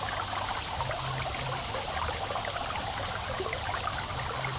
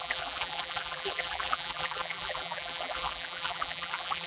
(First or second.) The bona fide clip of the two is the first